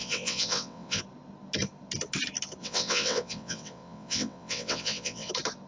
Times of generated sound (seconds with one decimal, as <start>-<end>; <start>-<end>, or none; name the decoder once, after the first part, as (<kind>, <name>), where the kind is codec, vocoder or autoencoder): 0.0-1.0 (vocoder, WaveNeXt); 2.6-5.3